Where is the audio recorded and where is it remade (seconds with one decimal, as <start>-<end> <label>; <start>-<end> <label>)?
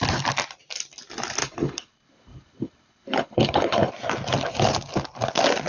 0.0-1.4 recorded; 1.4-3.9 remade; 3.9-5.7 recorded